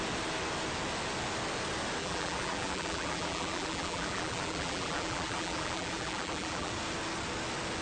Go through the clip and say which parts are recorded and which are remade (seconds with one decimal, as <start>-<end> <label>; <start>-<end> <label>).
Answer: 0.0-2.0 recorded; 2.0-6.7 remade; 6.7-7.8 recorded